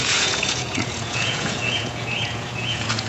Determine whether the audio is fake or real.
fake